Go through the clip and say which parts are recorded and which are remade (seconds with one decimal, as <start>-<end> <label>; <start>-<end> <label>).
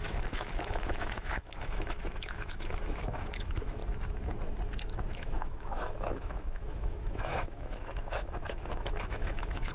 0.0-3.8 remade; 3.8-5.1 recorded; 5.1-9.7 remade